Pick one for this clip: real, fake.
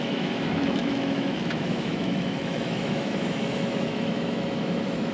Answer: fake